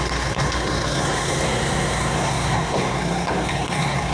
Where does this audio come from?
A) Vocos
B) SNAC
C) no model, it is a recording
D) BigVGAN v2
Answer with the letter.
B